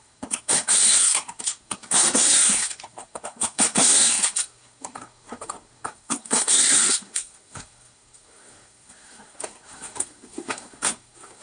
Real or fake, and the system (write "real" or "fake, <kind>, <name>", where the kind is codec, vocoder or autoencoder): fake, codec, SNAC